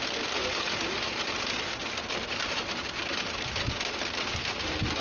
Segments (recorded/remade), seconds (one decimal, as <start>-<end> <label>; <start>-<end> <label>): 0.0-5.0 recorded